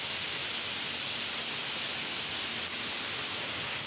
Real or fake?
real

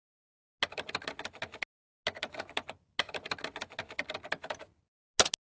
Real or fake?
real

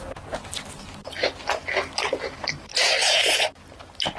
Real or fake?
real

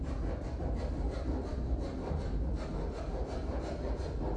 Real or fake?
real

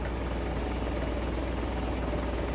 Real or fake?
real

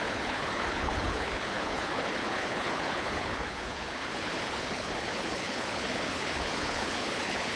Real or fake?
fake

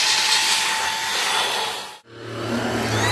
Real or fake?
real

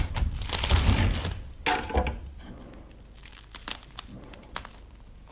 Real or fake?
real